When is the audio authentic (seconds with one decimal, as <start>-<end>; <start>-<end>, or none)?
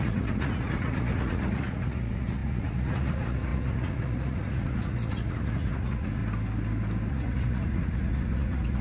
6.2-7.1